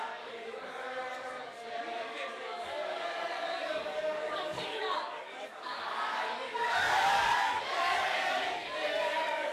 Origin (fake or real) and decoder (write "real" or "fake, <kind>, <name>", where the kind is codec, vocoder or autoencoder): fake, codec, DAC